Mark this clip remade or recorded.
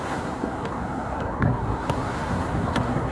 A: remade